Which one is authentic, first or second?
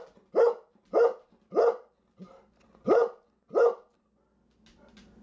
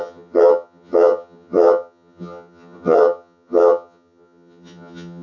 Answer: first